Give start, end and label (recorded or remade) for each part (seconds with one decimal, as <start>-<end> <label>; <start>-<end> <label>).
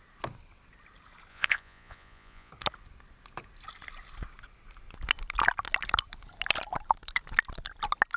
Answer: 0.0-1.3 recorded; 1.3-2.5 remade; 2.5-8.2 recorded